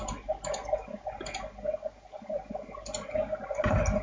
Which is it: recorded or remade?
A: recorded